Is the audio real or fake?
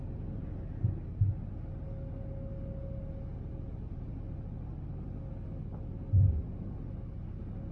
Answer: real